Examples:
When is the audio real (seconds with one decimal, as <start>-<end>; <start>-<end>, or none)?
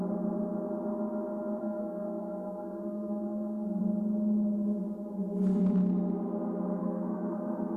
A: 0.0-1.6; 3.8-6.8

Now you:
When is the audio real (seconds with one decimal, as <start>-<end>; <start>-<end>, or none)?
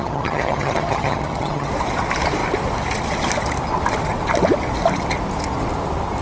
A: 1.7-6.2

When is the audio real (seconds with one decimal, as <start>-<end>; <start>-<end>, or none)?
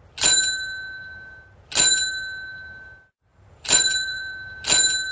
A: 0.0-3.3; 4.3-5.1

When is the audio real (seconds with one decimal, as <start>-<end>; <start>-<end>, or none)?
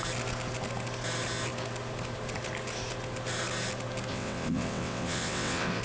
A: 0.0-4.1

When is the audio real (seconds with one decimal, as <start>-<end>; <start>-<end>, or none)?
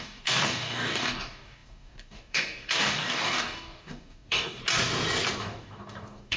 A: 4.6-5.4